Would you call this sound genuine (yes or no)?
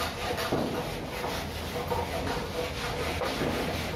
yes